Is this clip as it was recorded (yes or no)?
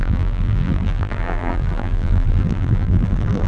no